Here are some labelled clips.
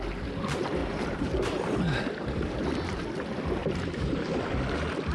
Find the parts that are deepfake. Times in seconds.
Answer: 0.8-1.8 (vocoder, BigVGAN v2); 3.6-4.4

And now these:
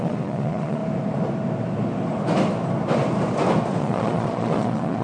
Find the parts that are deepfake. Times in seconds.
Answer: 0.0-0.8 (vocoder, Vocos); 3.8-5.0

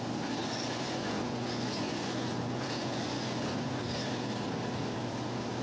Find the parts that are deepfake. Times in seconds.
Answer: 0.4-3.8 (vocoder, Vocos)

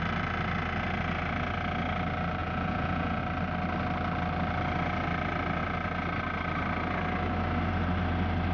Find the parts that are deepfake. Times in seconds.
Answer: 2.4-3.2 (vocoder, Vocos)

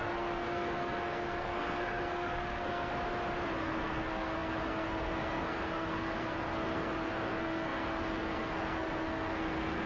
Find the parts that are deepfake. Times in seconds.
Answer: 0.0-2.9 (codec, SNAC); 3.6-9.9